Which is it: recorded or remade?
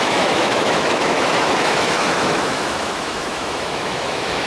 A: remade